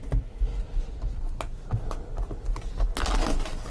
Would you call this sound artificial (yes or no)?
no